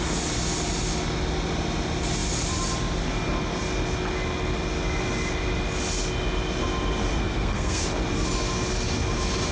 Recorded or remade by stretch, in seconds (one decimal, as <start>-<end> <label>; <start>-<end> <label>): 0.0-7.1 recorded; 7.1-7.8 remade; 7.8-9.5 recorded